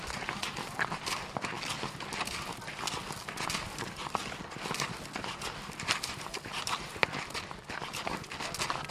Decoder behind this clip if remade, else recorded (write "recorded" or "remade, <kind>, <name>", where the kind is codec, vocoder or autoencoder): recorded